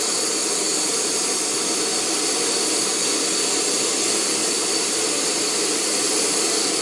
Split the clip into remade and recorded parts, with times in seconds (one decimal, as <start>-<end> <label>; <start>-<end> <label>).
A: 0.0-0.7 recorded; 0.7-1.5 remade; 1.5-4.4 recorded; 4.4-5.9 remade; 5.9-6.8 recorded